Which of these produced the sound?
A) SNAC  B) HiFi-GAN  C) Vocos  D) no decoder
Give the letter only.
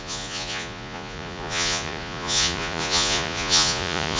C